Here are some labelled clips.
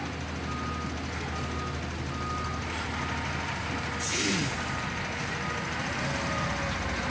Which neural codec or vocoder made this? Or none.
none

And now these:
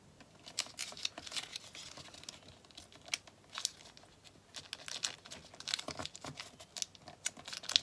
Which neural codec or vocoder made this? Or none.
none